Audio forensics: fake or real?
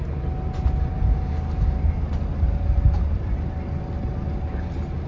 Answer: real